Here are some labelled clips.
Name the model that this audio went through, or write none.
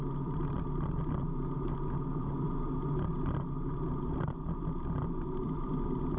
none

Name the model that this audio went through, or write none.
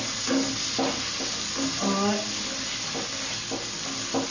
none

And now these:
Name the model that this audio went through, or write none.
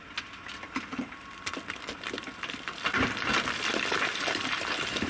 none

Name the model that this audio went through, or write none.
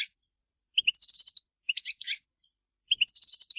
none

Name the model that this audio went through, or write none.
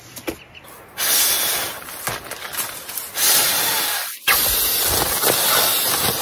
none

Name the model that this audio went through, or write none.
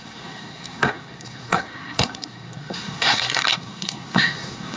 codec, SNAC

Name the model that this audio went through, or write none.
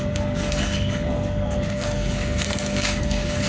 codec, SNAC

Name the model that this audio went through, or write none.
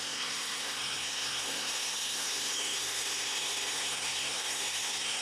codec, SNAC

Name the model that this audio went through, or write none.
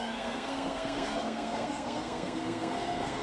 codec, SNAC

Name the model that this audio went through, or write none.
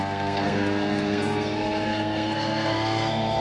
codec, SNAC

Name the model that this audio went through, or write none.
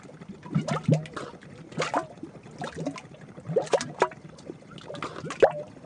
none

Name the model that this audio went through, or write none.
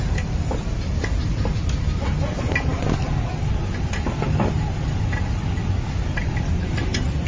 none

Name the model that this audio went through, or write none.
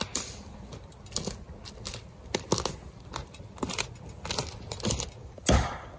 none